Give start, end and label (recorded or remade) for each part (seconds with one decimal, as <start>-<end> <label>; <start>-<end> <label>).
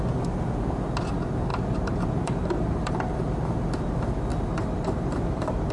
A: 0.0-1.5 recorded; 1.5-2.9 remade; 2.9-4.3 recorded; 4.3-5.7 remade